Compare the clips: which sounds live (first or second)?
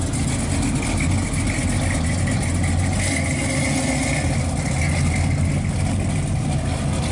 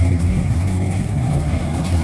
first